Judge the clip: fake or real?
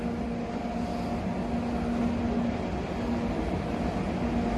real